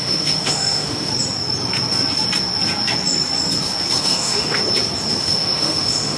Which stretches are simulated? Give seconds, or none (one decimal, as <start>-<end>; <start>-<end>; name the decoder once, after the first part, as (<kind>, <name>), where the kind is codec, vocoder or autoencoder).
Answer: 0.0-1.1 (autoencoder, DAC-VAE); 4.0-4.6; 5.2-6.2